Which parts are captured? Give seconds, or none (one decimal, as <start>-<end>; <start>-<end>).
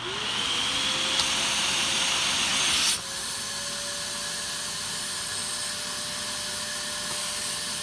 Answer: 0.0-7.8